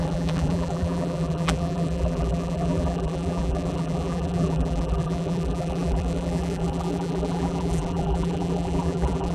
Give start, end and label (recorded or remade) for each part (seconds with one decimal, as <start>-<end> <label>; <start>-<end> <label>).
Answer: 0.0-9.3 remade